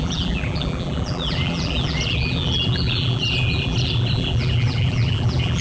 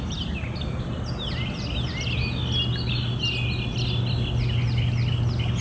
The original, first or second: second